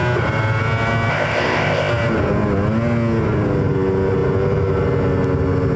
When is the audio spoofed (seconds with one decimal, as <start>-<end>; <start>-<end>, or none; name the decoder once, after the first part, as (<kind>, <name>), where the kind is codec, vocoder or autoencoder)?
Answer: 1.1-1.9 (codec, ZipCodec)